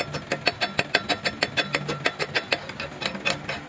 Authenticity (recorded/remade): recorded